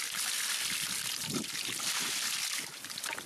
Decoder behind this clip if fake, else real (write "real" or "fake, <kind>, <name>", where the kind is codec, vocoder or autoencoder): real